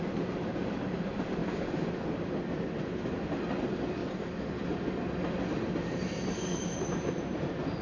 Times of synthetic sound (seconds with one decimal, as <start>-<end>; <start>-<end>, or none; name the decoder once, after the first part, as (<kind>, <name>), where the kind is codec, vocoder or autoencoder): 0.0-1.4 (vocoder, BigVGAN v2); 3.6-4.0; 5.6-7.8